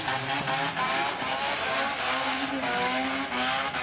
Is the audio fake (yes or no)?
no